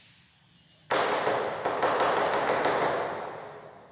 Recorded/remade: recorded